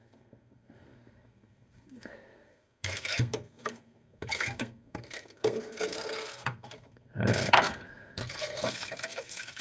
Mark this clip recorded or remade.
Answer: remade